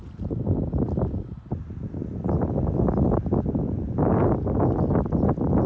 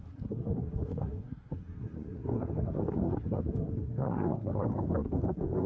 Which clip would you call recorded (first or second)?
first